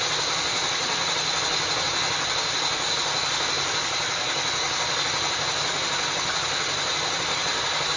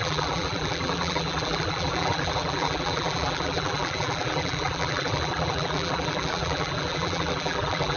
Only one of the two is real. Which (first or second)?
first